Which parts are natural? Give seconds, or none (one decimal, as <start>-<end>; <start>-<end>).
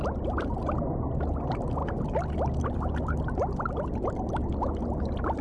0.0-5.4